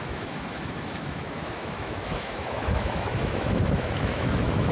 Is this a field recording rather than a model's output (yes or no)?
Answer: no